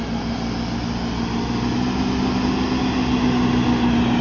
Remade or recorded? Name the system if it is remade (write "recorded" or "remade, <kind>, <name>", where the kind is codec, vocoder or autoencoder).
recorded